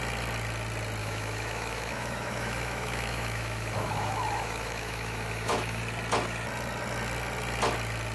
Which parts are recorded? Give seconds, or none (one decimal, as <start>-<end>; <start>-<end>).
0.0-1.0; 5.8-8.1